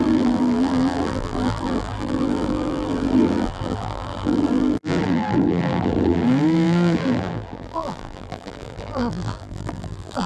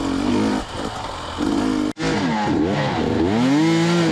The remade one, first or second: first